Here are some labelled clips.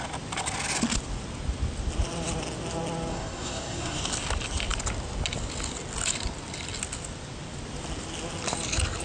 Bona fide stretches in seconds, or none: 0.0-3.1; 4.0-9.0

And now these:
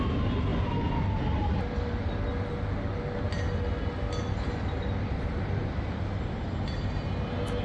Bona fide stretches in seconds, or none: 0.0-7.6

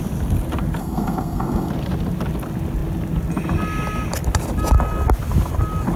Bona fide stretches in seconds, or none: 0.0-0.8; 1.7-6.0

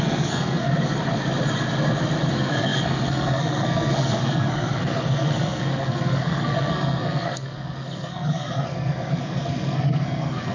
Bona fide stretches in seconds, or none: 0.7-2.3

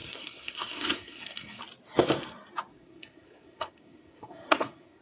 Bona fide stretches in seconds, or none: 1.6-2.7

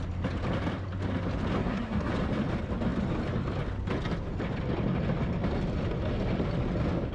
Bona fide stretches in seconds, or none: 0.0-1.6; 2.1-7.1

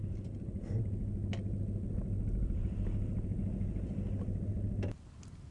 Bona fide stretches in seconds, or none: 0.0-5.5